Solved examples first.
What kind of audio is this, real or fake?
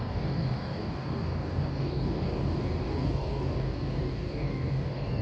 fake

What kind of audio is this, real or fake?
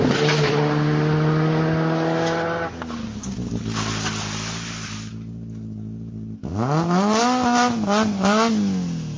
real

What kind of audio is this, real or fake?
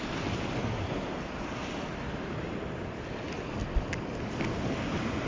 real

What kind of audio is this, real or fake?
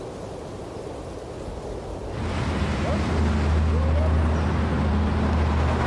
real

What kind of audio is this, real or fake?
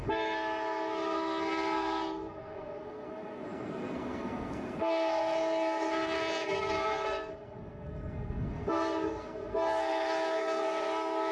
fake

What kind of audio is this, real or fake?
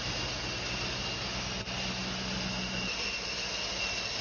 real